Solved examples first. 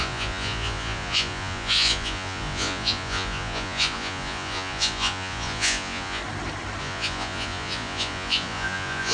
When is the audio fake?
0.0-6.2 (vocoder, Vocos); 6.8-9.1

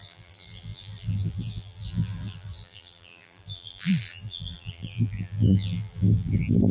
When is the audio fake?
0.0-6.7 (vocoder, BigVGAN v2)

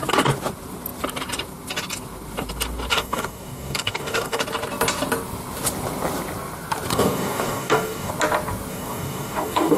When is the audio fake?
2.9-4.4 (codec, DAC); 6.9-8.1; 8.7-9.8